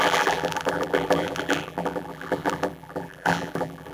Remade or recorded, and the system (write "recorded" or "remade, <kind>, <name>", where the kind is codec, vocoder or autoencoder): remade, vocoder, BigVGAN v2